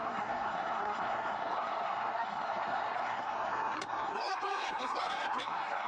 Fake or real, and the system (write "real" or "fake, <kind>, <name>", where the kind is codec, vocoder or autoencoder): fake, codec, SNAC